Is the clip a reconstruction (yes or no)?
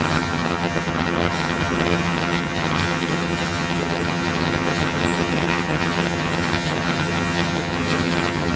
yes